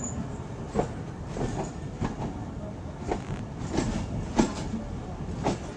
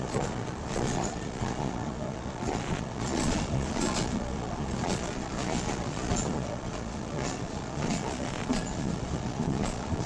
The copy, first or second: second